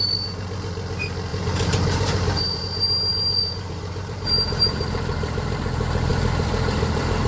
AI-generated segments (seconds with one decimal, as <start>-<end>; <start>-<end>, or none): 1.3-2.6; 3.1-5.6; 6.1-7.3